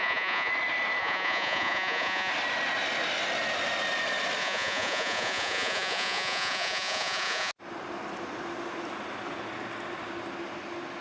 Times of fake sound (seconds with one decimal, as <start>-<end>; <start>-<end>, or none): 0.0-0.5; 1.0-2.3; 4.4-7.5